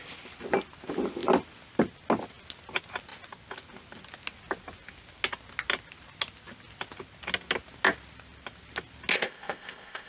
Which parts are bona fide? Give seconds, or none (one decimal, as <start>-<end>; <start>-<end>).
0.0-9.1